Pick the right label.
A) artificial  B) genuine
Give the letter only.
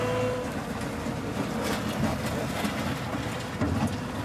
B